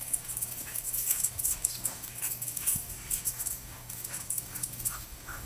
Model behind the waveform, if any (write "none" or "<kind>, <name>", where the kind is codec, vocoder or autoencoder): codec, DAC